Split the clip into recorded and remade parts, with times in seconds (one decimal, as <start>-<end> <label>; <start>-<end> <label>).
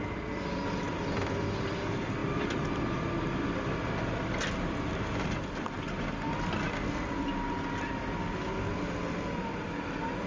0.0-10.3 recorded